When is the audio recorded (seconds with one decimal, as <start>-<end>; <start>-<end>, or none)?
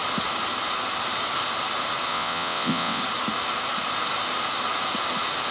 0.0-2.1; 3.0-5.5